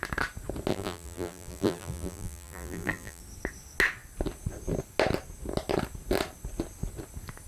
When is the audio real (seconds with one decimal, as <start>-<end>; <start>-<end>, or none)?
0.0-0.7; 3.2-7.5